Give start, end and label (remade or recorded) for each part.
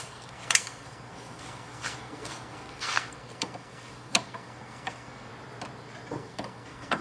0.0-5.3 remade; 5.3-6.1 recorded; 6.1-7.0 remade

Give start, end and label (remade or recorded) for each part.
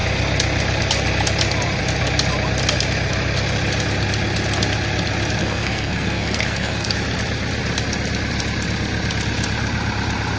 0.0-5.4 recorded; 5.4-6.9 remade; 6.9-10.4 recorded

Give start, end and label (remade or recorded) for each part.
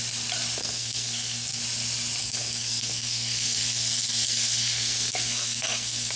0.0-0.6 recorded; 0.6-1.6 remade; 1.6-2.2 recorded; 2.2-6.2 remade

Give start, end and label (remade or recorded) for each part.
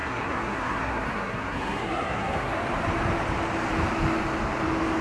0.0-2.6 remade; 2.6-5.0 recorded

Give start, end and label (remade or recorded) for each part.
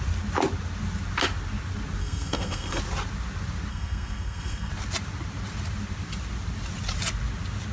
0.0-2.0 recorded; 2.0-2.8 remade; 2.8-3.7 recorded; 3.7-4.7 remade; 4.7-7.7 recorded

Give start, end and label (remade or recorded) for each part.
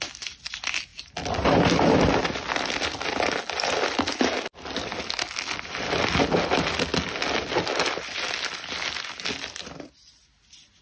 0.0-10.8 recorded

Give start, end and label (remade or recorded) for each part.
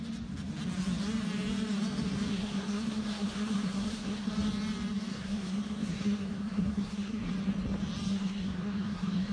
0.0-2.3 recorded; 2.3-4.3 remade; 4.3-5.1 recorded; 5.1-7.3 remade; 7.3-8.1 recorded; 8.1-9.3 remade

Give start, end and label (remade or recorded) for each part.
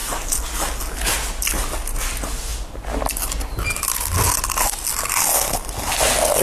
0.0-6.4 recorded